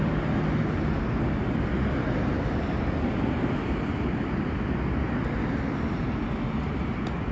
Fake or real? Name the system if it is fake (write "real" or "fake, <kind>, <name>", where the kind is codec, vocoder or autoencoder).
real